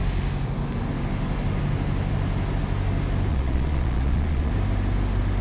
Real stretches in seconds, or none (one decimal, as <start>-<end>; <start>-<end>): 0.0-3.3; 4.5-5.4